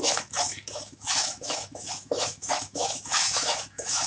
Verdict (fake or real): fake